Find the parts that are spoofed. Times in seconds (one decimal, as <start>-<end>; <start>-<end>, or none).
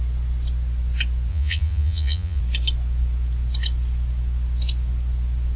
1.3-2.4